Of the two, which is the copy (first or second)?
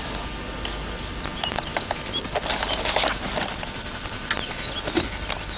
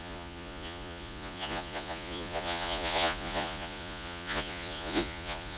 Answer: second